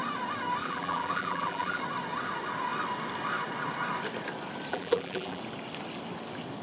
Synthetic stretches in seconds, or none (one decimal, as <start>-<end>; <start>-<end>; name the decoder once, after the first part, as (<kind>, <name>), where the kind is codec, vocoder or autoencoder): 0.6-1.8 (vocoder, BigVGAN v2); 4.7-5.4